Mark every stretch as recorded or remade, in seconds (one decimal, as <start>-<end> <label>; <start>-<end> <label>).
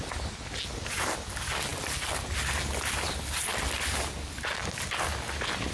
0.0-5.7 recorded